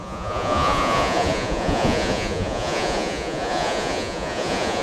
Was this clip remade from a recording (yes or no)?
yes